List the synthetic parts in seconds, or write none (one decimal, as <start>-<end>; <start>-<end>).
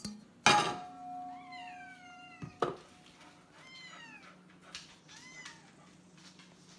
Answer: none